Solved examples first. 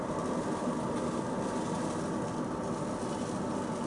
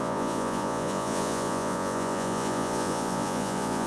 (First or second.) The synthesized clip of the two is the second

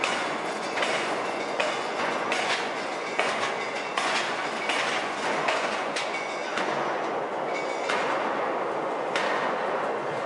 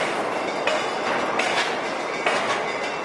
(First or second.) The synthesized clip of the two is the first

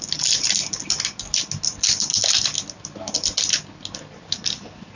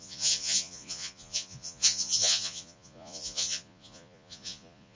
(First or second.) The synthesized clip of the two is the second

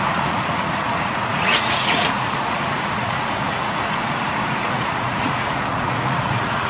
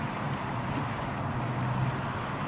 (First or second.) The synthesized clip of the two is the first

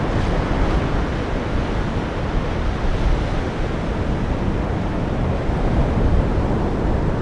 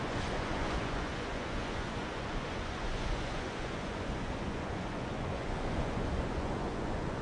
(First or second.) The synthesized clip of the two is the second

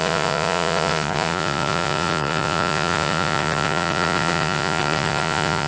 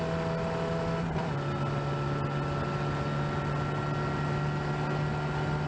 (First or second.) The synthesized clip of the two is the first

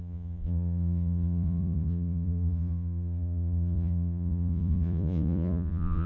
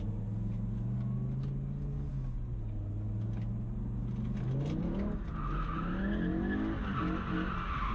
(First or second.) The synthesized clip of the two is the first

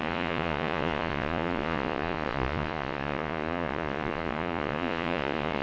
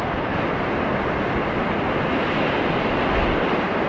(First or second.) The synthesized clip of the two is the first